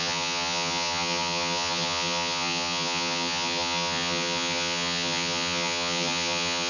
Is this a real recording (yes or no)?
no